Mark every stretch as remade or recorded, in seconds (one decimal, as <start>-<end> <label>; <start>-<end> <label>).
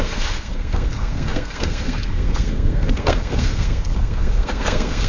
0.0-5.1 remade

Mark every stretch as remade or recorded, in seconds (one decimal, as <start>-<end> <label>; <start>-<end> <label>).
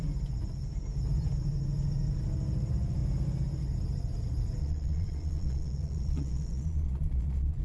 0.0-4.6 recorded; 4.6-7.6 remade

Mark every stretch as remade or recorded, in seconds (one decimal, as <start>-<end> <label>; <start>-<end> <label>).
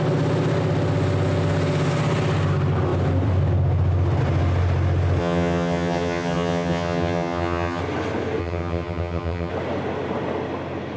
0.0-5.2 recorded; 5.2-7.8 remade; 7.8-8.4 recorded; 8.4-9.5 remade; 9.5-11.0 recorded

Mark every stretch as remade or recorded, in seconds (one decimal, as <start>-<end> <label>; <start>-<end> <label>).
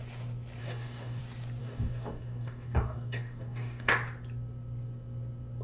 0.0-0.6 recorded; 0.6-1.2 remade; 1.2-1.6 recorded; 1.6-3.9 remade; 3.9-5.6 recorded